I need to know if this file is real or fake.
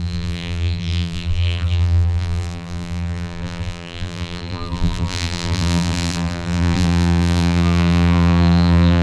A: fake